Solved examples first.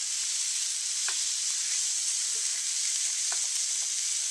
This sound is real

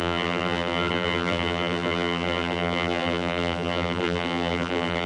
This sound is fake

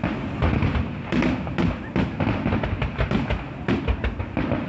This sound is real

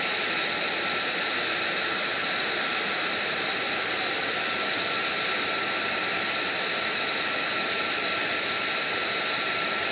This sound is real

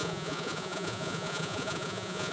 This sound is fake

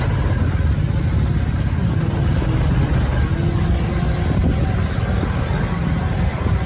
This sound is real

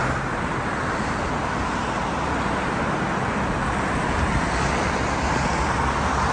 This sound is real